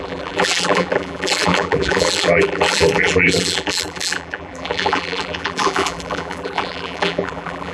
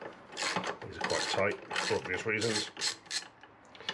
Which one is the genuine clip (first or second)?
second